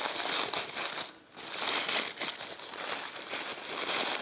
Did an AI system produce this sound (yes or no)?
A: no